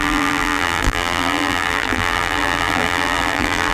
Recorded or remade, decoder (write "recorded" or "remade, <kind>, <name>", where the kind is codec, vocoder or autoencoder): remade, vocoder, BigVGAN v2